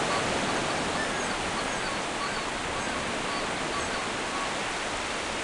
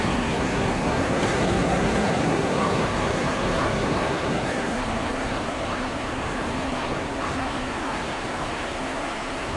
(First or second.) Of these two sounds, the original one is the first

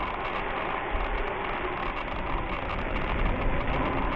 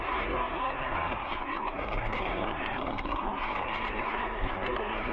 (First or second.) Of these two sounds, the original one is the first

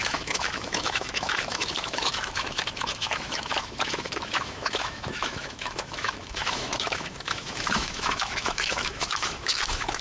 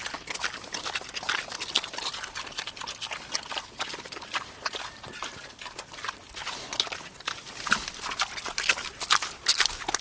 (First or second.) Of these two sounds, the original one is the second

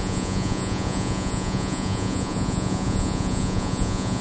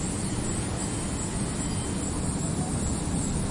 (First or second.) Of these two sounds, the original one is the second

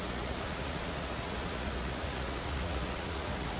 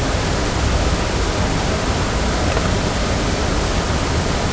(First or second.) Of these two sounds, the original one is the second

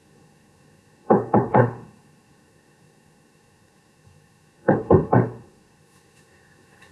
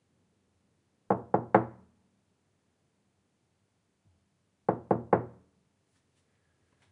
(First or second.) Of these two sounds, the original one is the second